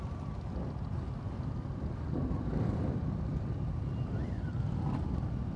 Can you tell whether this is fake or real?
real